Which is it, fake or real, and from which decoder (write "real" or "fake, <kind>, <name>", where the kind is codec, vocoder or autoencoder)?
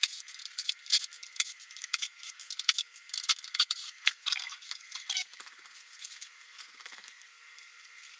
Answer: fake, codec, SNAC